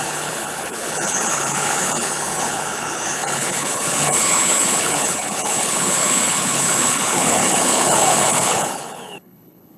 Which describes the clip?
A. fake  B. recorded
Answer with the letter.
A